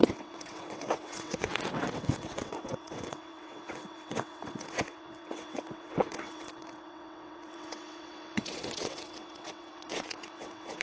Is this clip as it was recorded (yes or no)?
no